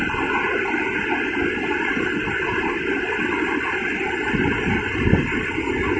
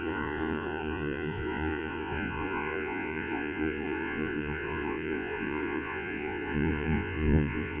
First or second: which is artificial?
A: second